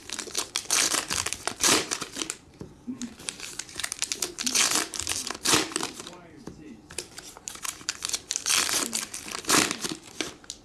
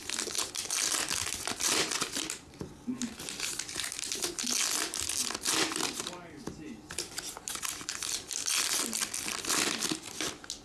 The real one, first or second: second